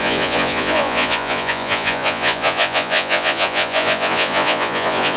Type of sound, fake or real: fake